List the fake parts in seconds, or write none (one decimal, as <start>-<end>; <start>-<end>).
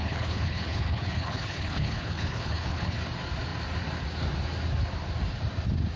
0.0-3.0